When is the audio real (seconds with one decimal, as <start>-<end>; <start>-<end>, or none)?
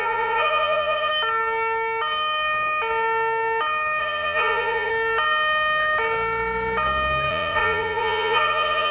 1.1-4.0; 4.9-7.3